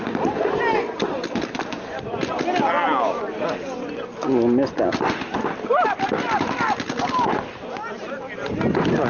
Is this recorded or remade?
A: recorded